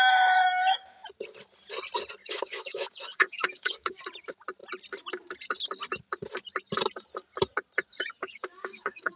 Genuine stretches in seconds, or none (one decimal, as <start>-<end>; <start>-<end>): 0.0-2.2; 4.0-8.2